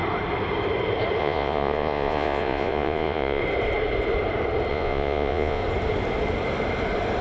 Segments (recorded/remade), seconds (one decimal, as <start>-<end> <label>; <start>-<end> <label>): 0.0-1.2 recorded; 1.2-3.4 remade; 3.4-4.7 recorded; 4.7-5.6 remade; 5.6-7.2 recorded